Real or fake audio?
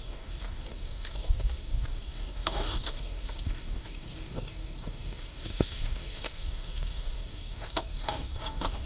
fake